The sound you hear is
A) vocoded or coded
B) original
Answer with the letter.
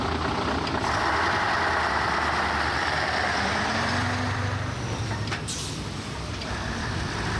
A